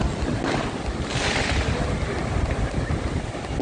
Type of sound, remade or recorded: recorded